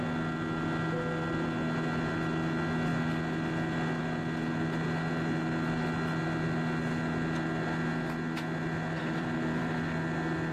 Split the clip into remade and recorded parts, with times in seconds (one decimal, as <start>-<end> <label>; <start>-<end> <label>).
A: 0.0-9.0 recorded; 9.0-9.7 remade; 9.7-10.5 recorded